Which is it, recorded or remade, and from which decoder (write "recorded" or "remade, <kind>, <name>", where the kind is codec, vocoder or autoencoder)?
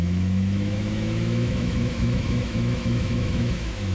remade, autoencoder, DAC-VAE